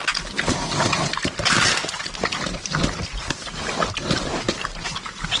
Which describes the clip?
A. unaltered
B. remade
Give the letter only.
A